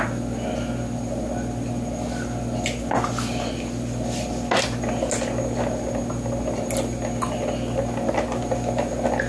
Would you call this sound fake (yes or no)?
no